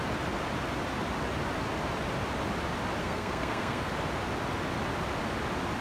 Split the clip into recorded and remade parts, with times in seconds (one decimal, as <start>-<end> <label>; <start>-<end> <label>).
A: 0.0-3.0 recorded; 3.0-3.9 remade; 3.9-5.8 recorded